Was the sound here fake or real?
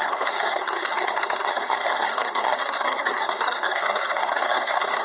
fake